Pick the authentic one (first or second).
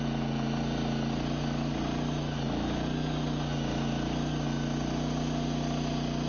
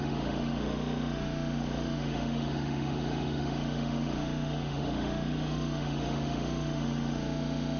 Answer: first